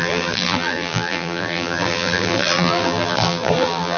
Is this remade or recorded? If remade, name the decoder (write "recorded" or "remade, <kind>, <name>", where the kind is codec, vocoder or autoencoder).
remade, vocoder, BigVGAN v2